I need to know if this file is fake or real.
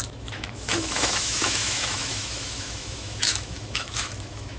fake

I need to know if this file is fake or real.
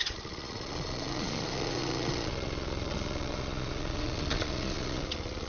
fake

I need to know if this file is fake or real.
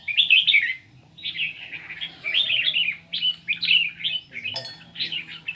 real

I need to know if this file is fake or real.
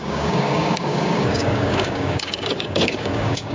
fake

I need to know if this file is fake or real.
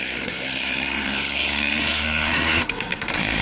fake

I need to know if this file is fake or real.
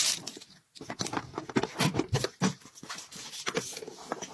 real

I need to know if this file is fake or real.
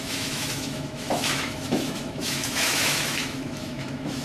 fake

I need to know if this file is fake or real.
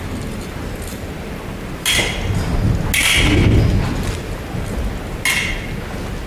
real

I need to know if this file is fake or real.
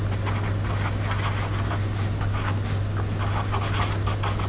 real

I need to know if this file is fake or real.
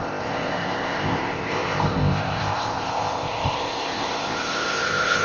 fake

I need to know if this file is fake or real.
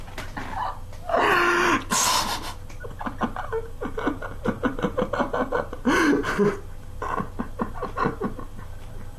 real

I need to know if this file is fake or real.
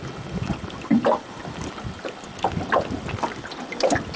real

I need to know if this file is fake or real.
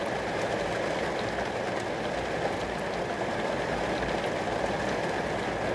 real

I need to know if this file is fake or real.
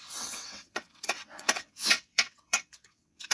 fake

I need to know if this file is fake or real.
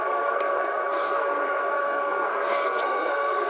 fake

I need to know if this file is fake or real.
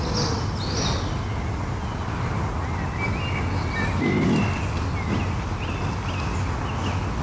real